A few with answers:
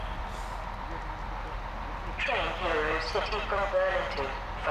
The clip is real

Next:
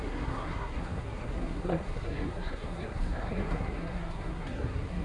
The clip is fake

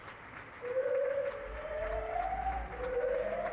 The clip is real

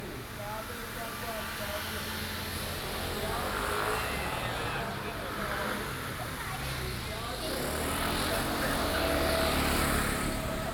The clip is real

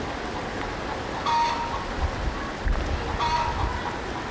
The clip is real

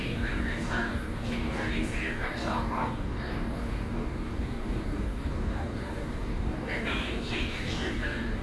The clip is fake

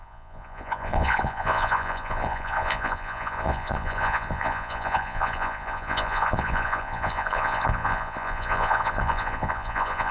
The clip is fake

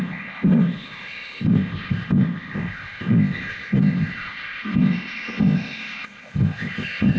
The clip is fake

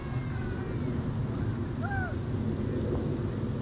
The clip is real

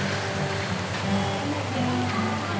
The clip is real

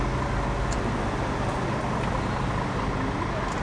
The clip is real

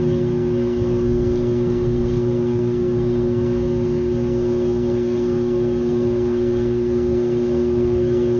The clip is fake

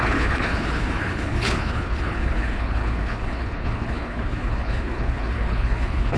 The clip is fake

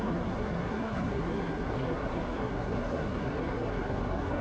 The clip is fake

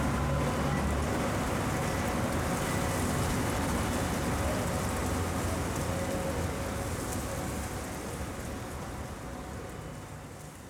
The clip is real